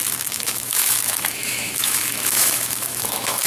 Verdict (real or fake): fake